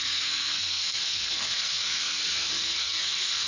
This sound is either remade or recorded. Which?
remade